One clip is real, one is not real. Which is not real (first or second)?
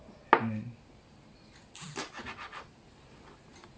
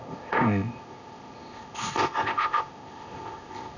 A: second